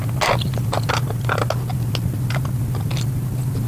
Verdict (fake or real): real